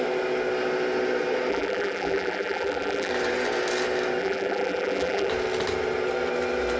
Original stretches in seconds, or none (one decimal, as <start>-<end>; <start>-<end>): 0.0-1.5; 3.1-4.2; 5.3-6.8